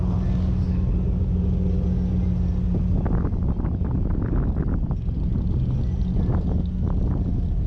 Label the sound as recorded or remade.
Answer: recorded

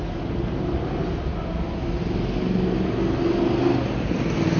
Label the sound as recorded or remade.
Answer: recorded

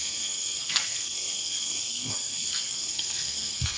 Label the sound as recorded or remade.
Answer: remade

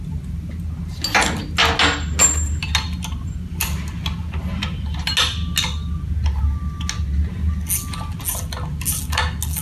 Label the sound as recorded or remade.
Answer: recorded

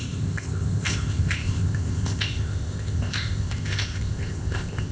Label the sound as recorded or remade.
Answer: remade